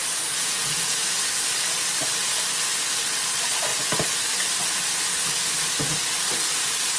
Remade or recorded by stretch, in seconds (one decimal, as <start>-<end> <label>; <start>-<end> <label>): 0.0-1.3 remade; 1.3-7.0 recorded